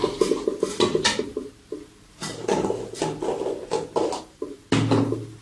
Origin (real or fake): real